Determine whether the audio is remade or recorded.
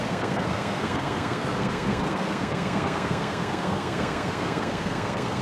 remade